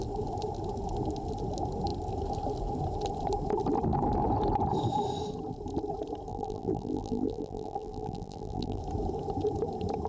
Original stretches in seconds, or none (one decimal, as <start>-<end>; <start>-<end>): 0.0-6.3; 8.8-10.1